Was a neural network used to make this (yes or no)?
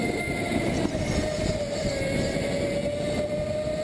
no